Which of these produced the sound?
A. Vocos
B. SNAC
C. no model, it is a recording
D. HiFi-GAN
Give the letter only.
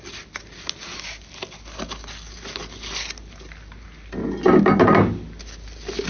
C